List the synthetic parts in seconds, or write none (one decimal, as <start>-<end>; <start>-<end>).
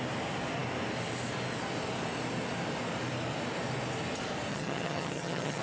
4.5-5.6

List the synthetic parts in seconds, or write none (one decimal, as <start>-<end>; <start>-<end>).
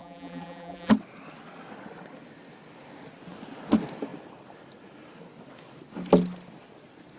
0.0-0.9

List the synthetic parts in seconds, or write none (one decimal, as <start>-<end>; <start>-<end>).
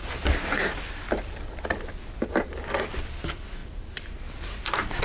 none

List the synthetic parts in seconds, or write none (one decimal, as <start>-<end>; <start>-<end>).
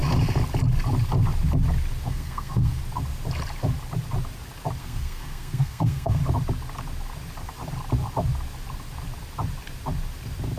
2.1-2.8; 4.8-6.2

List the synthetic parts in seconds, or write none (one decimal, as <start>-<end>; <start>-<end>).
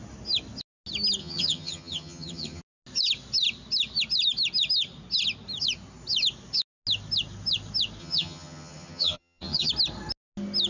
1.2-2.6; 8.0-9.7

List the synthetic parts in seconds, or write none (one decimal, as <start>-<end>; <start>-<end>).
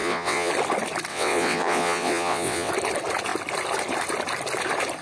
0.0-0.5; 1.1-2.7